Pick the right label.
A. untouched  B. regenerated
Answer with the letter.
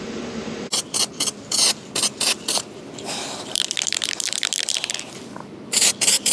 A